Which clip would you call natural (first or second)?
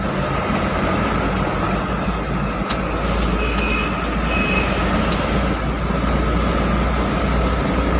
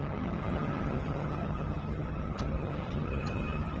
first